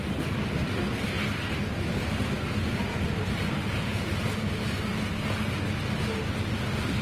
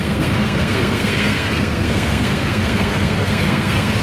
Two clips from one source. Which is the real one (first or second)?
first